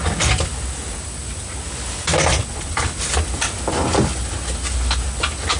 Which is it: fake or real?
real